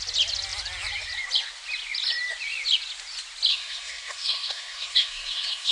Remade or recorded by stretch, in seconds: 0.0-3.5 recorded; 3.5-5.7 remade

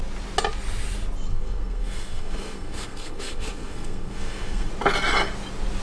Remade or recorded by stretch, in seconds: 0.0-1.3 recorded; 1.3-4.7 remade; 4.7-5.8 recorded

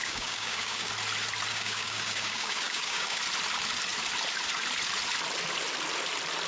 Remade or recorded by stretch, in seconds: 0.0-0.9 remade; 0.9-1.5 recorded; 1.5-3.2 remade; 3.2-6.5 recorded

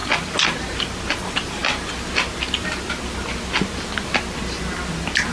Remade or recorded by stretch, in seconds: 0.0-5.3 recorded

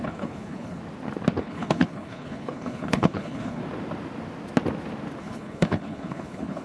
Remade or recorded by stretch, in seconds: 0.0-0.8 remade; 0.8-1.4 recorded; 1.4-3.6 remade; 3.6-5.2 recorded; 5.2-6.6 remade

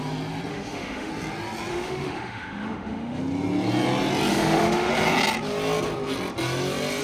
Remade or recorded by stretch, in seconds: 0.0-0.5 recorded; 0.5-1.1 remade; 1.1-1.7 recorded; 1.7-3.2 remade; 3.2-4.3 recorded; 4.3-4.9 remade; 4.9-7.0 recorded

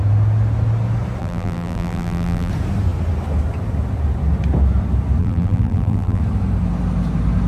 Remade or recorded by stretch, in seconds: 0.0-1.2 recorded; 1.2-2.5 remade; 2.5-5.2 recorded; 5.2-6.2 remade; 6.2-7.5 recorded